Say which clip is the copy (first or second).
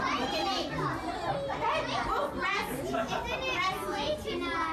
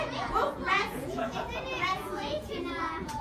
second